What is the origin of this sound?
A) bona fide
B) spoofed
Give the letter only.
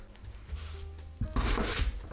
A